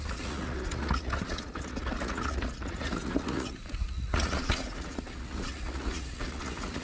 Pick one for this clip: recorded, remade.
remade